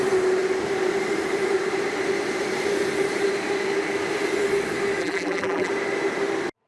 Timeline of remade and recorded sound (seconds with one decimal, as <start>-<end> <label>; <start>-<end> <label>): 0.0-5.0 recorded; 5.0-5.7 remade; 5.7-6.7 recorded